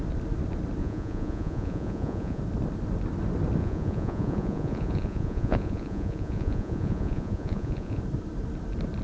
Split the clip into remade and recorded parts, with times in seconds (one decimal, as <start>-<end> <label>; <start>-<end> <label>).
0.0-0.8 recorded; 0.8-2.4 remade; 2.4-3.6 recorded; 3.6-8.0 remade; 8.0-9.0 recorded